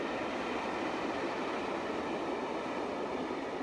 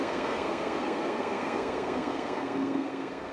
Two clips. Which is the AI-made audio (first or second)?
second